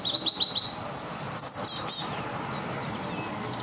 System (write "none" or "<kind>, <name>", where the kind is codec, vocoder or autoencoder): none